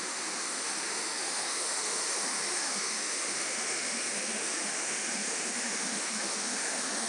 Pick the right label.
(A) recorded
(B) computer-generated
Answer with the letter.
B